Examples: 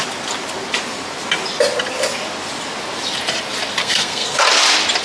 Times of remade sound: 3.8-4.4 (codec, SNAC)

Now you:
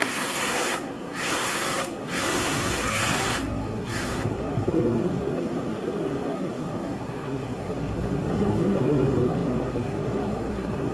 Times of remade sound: 0.0-10.9 (codec, SNAC)

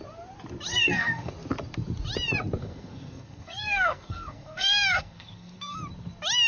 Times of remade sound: 0.7-1.3 (codec, SNAC); 2.6-5.8

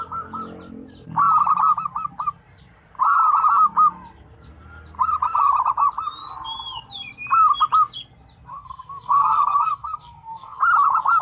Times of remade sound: 8.5-10.6 (codec, SNAC)